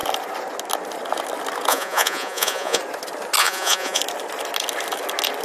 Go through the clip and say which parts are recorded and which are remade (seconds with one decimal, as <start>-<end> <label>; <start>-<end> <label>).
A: 0.0-1.7 recorded; 1.7-2.8 remade; 2.8-3.4 recorded; 3.4-4.0 remade; 4.0-5.4 recorded